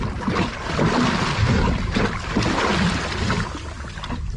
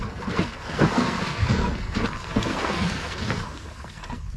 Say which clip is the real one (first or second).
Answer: first